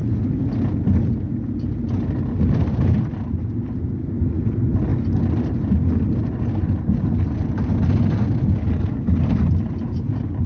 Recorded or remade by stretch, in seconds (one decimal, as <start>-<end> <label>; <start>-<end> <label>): 0.0-10.5 recorded